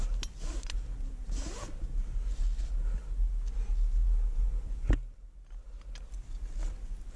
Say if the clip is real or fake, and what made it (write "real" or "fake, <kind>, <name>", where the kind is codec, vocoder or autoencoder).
real